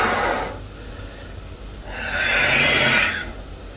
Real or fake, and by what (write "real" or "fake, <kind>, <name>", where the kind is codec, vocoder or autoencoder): real